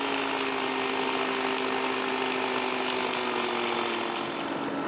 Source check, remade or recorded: recorded